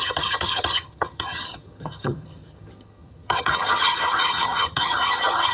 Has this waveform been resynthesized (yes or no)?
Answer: yes